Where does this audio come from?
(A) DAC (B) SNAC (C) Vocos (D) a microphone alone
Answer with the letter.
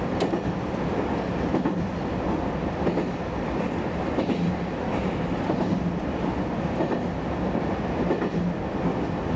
D